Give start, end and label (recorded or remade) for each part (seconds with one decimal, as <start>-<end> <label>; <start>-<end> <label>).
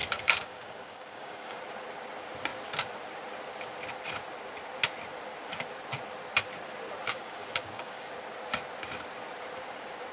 0.0-1.6 remade; 1.6-7.1 recorded; 7.1-8.1 remade; 8.1-10.1 recorded